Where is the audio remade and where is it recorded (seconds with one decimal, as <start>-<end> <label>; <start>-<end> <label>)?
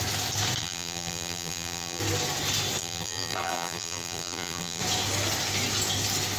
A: 0.0-0.6 recorded; 0.6-2.0 remade; 2.0-2.8 recorded; 2.8-4.8 remade; 4.8-6.4 recorded